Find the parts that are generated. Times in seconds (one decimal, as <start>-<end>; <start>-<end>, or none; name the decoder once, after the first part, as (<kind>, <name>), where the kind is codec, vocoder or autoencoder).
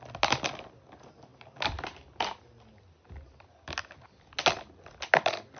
none